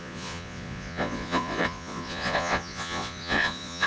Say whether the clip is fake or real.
fake